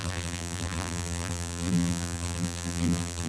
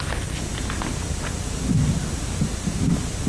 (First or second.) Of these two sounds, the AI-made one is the first